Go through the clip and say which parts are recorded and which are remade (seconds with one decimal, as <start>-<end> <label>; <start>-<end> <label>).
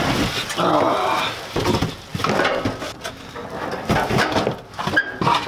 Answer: 0.0-5.5 recorded